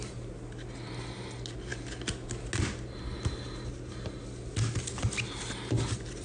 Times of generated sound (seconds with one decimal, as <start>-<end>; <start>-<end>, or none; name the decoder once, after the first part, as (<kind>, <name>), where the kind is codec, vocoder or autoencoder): none